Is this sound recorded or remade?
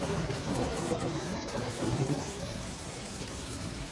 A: remade